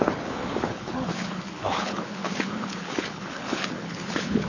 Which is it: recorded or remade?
remade